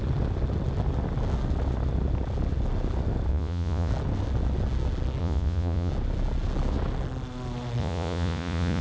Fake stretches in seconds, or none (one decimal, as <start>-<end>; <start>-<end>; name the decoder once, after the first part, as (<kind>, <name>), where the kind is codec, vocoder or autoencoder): 3.3-3.9 (vocoder, Vocos); 5.2-5.9; 7.8-8.8